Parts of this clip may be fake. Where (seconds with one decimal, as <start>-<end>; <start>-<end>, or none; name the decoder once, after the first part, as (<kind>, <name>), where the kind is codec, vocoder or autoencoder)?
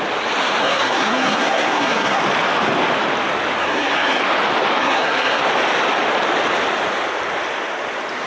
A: 0.6-2.2 (codec, SNAC); 3.6-4.2; 4.8-5.4